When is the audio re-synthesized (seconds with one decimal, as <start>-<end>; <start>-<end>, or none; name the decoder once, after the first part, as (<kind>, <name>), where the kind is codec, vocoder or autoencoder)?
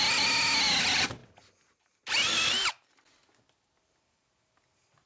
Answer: none